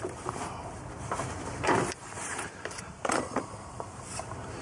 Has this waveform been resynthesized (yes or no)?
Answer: yes